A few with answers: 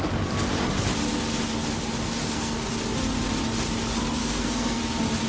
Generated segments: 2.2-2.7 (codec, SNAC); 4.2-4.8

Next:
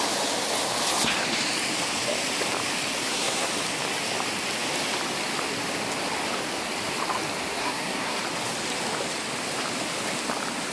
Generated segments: 3.0-3.5 (codec, SNAC); 7.6-8.2

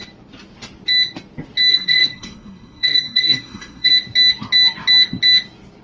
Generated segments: 1.7-3.9 (codec, SNAC)

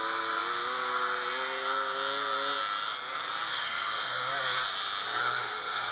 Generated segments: 3.5-4.3 (codec, SNAC); 5.2-5.9